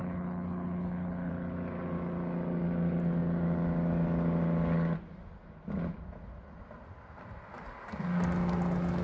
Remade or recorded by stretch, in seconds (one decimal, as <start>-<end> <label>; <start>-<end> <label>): 0.0-1.3 remade; 1.3-9.0 recorded